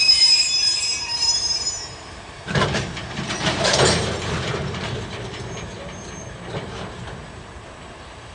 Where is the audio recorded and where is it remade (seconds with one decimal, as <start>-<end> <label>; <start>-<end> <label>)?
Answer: 0.0-8.3 remade